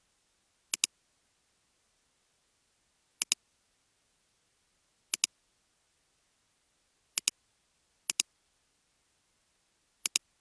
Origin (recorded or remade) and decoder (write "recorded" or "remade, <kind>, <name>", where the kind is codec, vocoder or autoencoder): recorded